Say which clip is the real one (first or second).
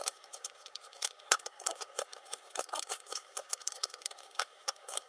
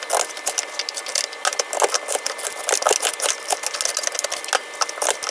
second